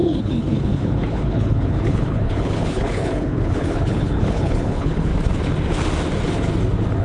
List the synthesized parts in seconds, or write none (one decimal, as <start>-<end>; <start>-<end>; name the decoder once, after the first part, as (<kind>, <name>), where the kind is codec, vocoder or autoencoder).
0.0-5.1 (codec, HILCodec)